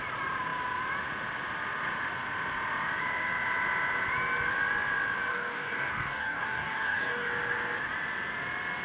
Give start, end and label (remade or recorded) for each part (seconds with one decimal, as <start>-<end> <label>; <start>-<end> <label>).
0.0-5.3 recorded; 5.3-7.3 remade; 7.3-8.8 recorded